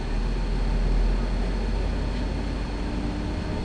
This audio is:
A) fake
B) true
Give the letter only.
B